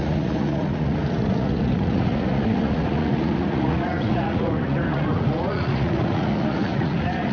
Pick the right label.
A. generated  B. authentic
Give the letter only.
A